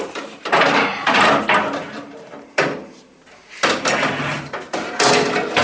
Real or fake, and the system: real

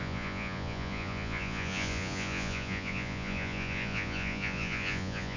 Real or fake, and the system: fake, vocoder, Vocos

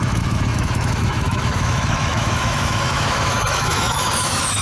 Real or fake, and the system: fake, autoencoder, DAC-VAE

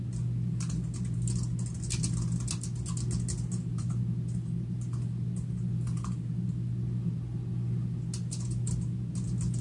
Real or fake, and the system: real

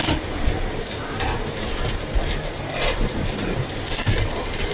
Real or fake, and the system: fake, vocoder, BigVGAN v2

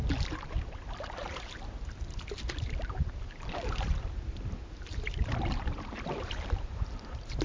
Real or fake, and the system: fake, vocoder, BigVGAN v2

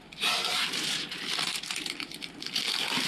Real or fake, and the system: real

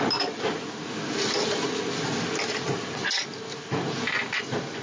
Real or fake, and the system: real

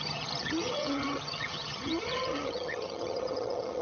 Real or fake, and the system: fake, vocoder, HiFi-GAN